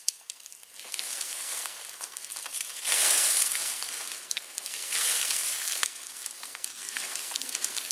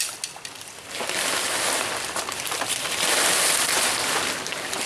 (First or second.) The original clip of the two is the second